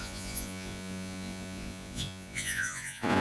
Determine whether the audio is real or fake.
fake